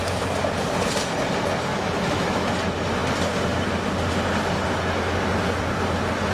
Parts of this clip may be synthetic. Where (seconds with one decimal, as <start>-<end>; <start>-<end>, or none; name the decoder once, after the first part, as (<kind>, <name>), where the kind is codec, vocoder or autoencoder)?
1.7-2.5 (autoencoder, DAC-VAE)